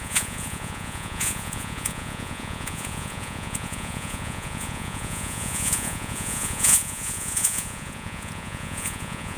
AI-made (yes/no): yes